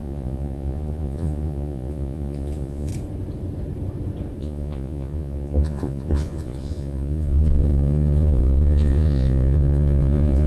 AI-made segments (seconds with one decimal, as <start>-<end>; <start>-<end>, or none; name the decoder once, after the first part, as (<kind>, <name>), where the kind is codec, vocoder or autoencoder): 0.0-2.9 (vocoder, Vocos); 4.4-10.5